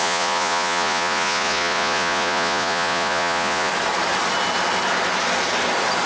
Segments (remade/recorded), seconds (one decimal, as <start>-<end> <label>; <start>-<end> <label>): 0.0-3.7 remade; 3.7-6.1 recorded